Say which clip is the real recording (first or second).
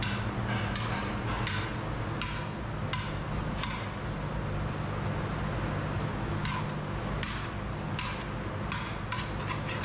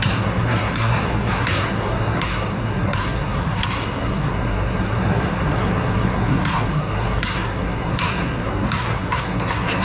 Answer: first